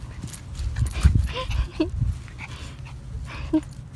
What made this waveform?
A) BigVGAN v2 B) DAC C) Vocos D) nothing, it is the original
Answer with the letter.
D